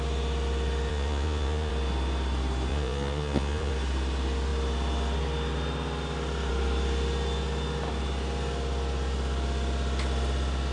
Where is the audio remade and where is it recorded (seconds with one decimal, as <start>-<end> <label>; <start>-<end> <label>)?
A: 0.0-0.9 recorded; 0.9-1.7 remade; 1.7-2.7 recorded; 2.7-3.7 remade; 3.7-10.7 recorded